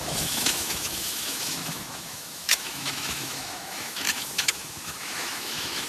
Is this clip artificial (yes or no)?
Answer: yes